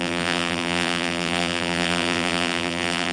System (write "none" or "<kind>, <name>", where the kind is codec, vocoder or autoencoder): vocoder, BigVGAN v2